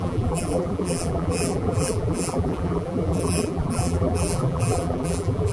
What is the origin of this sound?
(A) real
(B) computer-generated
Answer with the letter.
B